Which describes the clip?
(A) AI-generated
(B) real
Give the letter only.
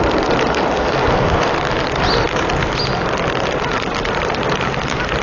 A